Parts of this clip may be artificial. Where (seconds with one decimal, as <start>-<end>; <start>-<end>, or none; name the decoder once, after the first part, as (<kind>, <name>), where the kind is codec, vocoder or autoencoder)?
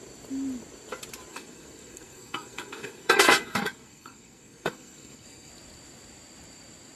1.3-5.5 (codec, SNAC)